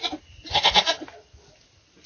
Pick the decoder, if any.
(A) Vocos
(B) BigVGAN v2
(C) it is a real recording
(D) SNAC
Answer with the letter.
C